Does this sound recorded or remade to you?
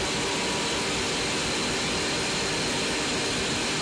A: recorded